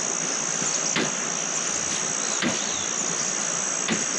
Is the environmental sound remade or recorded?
recorded